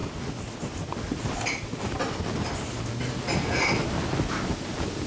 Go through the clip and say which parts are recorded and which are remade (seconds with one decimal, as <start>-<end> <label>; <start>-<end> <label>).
0.0-5.1 recorded

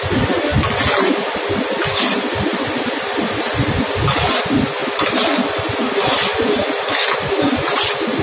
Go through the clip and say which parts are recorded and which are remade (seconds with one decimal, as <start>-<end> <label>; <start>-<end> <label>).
0.0-8.2 recorded

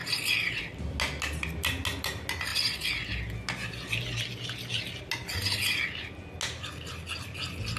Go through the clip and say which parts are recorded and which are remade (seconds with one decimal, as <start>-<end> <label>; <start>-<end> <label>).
0.0-0.6 remade; 0.6-7.8 recorded

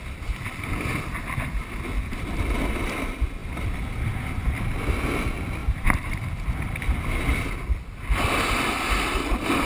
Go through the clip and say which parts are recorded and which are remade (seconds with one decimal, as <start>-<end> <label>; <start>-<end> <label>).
0.0-5.6 recorded; 5.6-6.1 remade; 6.1-9.7 recorded

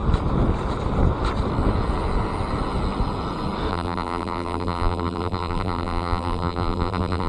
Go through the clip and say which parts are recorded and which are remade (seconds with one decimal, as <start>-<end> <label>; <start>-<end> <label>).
0.0-3.7 recorded; 3.7-7.3 remade